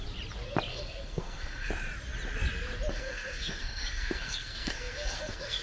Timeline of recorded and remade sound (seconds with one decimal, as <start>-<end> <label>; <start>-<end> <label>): 0.0-0.7 recorded; 0.7-1.7 remade; 1.7-2.9 recorded; 2.9-5.6 remade